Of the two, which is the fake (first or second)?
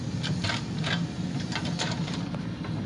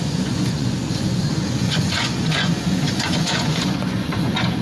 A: second